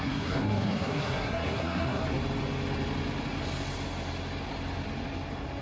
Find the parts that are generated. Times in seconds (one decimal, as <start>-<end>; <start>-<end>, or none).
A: 0.0-2.0